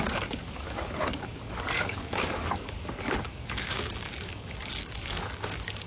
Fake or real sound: fake